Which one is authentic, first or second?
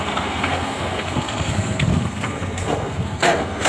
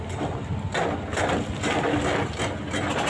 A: second